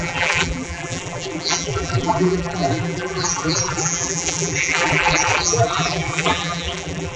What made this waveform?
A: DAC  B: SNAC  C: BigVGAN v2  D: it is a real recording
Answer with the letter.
C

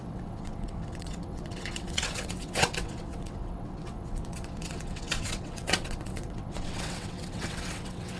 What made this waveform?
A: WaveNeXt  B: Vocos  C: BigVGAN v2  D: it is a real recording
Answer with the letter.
A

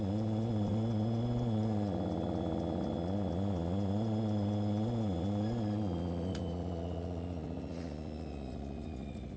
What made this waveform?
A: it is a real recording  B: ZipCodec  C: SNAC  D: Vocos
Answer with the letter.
D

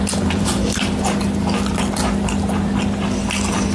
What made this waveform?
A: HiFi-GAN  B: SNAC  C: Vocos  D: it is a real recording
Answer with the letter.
D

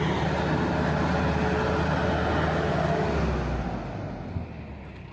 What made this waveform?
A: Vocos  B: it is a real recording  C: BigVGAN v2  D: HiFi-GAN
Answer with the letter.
B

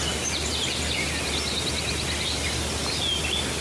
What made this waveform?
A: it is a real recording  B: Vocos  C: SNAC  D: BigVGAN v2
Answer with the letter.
A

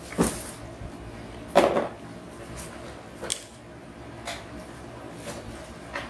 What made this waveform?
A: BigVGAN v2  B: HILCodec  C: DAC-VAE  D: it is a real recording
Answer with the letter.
D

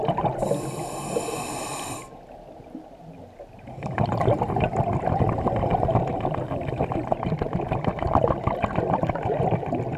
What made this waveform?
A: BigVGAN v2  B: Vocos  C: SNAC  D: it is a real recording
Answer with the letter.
D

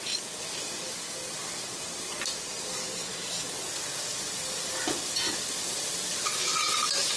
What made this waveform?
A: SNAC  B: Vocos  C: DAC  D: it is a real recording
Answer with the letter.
D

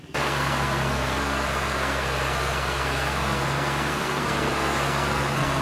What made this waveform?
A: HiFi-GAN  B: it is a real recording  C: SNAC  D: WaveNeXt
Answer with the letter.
C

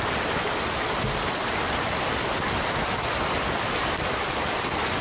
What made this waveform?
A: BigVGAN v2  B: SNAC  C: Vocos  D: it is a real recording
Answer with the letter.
D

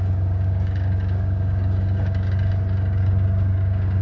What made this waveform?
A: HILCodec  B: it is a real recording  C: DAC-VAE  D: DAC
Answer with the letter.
D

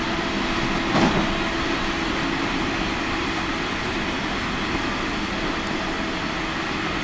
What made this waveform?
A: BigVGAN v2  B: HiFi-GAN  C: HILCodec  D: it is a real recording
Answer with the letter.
D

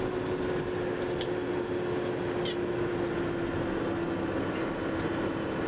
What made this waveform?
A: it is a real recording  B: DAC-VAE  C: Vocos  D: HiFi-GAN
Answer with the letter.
A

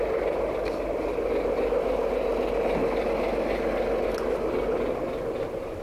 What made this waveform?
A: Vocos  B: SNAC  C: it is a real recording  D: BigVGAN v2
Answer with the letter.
C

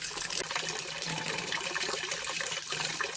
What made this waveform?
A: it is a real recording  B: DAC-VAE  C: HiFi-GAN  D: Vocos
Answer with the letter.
A